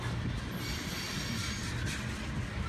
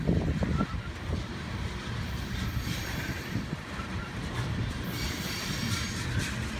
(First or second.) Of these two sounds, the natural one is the first